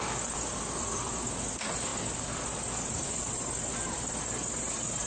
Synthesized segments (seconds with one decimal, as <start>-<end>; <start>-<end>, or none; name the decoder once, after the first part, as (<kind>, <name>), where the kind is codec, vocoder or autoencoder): none

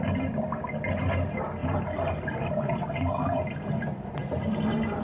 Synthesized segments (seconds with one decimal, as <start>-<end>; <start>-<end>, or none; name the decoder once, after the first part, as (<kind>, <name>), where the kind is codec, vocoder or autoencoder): 0.0-4.2 (vocoder, BigVGAN v2)

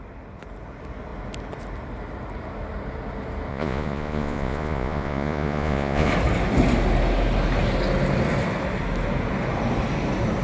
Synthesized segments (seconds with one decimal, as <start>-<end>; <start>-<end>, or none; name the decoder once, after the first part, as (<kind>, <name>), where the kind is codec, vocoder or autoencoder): 3.5-6.1 (vocoder, Vocos)

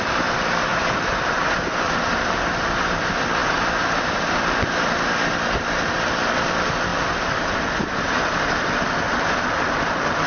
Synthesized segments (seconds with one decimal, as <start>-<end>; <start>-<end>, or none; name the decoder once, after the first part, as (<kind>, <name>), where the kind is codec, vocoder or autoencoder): 0.0-6.9 (vocoder, BigVGAN v2); 8.6-10.3